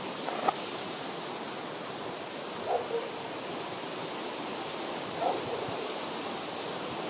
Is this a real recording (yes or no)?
yes